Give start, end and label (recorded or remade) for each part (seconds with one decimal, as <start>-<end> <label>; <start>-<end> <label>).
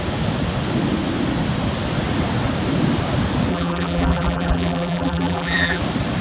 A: 0.0-3.5 recorded; 3.5-5.8 remade; 5.8-6.2 recorded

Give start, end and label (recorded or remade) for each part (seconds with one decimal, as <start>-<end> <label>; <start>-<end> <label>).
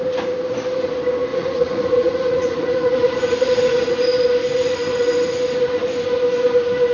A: 0.0-1.3 recorded; 1.3-4.0 remade; 4.0-6.9 recorded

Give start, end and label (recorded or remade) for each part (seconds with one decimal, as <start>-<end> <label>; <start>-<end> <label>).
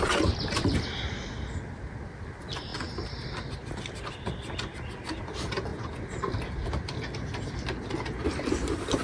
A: 0.0-2.7 remade; 2.7-5.2 recorded; 5.2-5.7 remade; 5.7-7.9 recorded; 7.9-9.0 remade